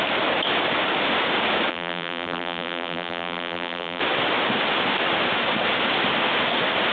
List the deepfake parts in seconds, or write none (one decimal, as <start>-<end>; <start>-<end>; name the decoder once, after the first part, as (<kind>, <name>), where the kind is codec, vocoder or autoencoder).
1.7-4.0 (vocoder, BigVGAN v2)

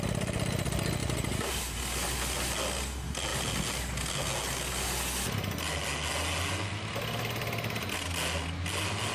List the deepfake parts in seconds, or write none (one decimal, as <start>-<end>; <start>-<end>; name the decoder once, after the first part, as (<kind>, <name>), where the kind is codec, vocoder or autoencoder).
1.0-1.8 (vocoder, BigVGAN v2)

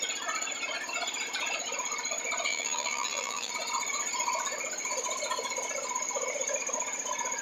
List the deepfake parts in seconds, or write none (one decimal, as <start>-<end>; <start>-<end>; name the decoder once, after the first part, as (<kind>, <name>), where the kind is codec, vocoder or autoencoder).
2.5-3.5 (vocoder, BigVGAN v2)

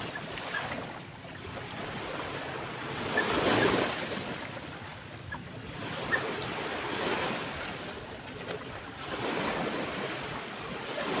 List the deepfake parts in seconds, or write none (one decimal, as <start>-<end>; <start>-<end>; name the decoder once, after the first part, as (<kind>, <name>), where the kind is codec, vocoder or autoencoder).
none

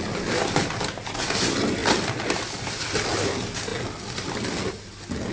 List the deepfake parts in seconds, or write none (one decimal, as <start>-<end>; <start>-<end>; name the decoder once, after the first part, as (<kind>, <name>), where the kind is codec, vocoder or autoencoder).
none